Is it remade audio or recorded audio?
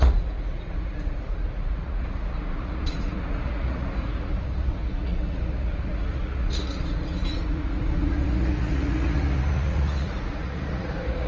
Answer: remade